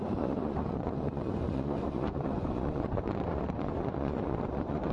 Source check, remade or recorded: remade